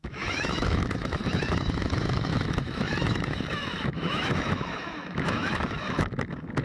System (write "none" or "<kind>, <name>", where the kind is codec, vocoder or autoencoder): autoencoder, DAC-VAE